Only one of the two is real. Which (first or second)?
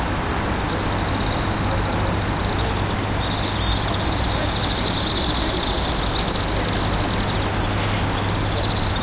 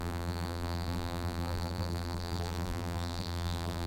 first